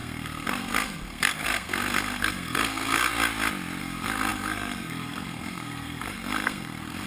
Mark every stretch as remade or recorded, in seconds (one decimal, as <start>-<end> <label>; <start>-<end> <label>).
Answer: 0.0-3.1 remade; 3.1-3.8 recorded; 3.8-7.1 remade

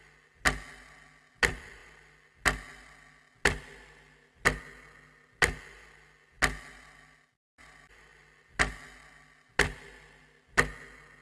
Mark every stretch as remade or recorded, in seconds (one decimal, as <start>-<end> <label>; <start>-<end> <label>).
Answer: 0.0-11.2 recorded

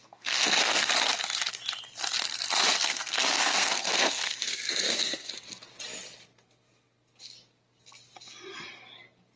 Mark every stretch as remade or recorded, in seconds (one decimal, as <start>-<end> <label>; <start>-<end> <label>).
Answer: 0.0-0.9 remade; 0.9-2.9 recorded; 2.9-5.3 remade; 5.3-9.4 recorded

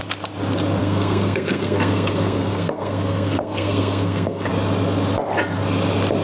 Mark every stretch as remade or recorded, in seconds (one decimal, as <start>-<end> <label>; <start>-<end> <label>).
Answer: 0.0-0.8 recorded; 0.8-4.5 remade; 4.5-6.2 recorded

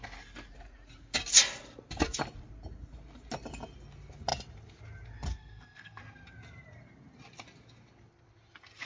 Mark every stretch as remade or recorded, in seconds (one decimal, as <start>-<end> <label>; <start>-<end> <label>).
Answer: 0.0-5.3 recorded; 5.3-6.0 remade; 6.0-8.9 recorded

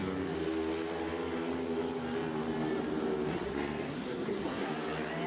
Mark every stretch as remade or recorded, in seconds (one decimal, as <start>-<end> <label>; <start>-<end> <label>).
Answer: 0.0-3.3 recorded; 3.3-4.7 remade; 4.7-5.3 recorded

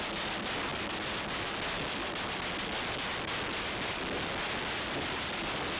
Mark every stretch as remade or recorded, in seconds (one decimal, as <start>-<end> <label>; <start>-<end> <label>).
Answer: 0.0-5.8 recorded

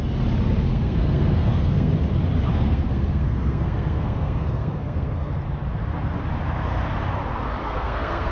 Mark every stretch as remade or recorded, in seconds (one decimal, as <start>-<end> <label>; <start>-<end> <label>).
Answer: 0.0-0.7 recorded; 0.7-1.9 remade; 1.9-2.5 recorded; 2.5-5.3 remade; 5.3-7.6 recorded; 7.6-8.3 remade